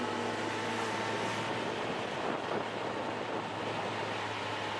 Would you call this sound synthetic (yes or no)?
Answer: no